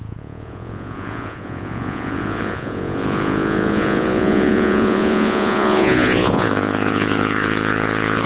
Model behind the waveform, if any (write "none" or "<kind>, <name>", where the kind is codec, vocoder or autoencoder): vocoder, Vocos